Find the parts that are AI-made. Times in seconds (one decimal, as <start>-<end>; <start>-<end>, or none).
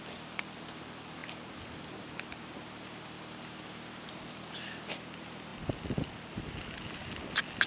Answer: none